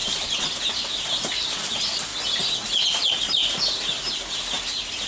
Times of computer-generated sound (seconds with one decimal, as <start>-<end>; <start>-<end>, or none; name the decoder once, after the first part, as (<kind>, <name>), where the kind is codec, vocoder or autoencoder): 0.0-0.5 (vocoder, Vocos)